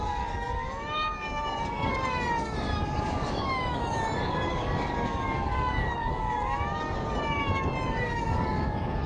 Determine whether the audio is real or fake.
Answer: fake